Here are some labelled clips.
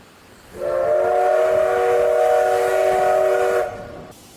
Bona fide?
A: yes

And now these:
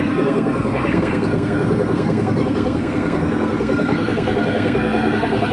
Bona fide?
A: no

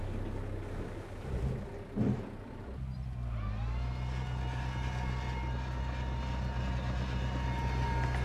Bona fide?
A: yes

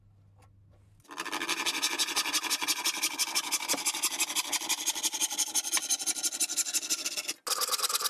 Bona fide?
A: yes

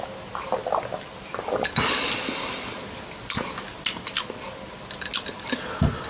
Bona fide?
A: yes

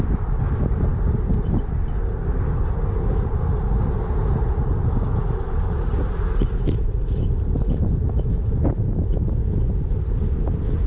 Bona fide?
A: yes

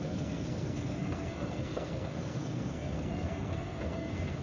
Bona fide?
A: no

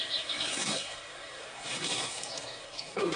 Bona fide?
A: no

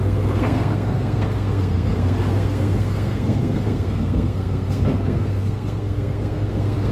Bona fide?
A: no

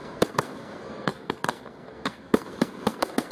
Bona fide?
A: no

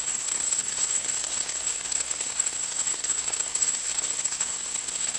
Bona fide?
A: no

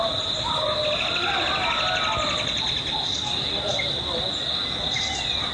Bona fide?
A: yes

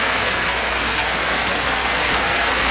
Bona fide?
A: no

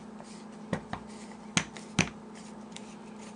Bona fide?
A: yes